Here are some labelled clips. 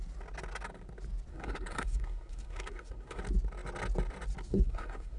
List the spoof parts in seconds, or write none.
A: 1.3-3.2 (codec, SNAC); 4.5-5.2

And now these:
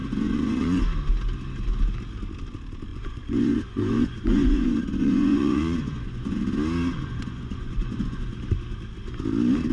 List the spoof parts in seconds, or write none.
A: 0.0-0.8 (vocoder, Vocos); 2.9-6.4; 6.9-8.4

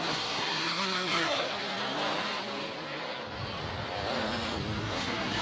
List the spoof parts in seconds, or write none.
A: 0.0-1.6 (codec, SNAC); 4.8-5.4

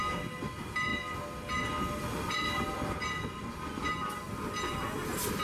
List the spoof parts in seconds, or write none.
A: none